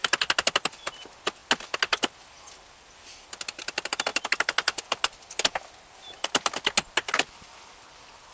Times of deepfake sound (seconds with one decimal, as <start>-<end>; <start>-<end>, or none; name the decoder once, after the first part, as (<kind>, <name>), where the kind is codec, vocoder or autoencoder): none